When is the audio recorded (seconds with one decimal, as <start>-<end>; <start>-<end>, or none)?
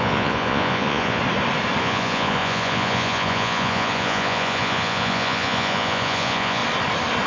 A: 1.2-1.8; 6.6-7.3